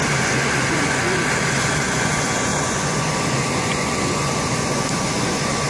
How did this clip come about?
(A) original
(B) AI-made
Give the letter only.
B